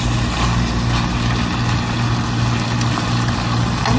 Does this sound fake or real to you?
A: real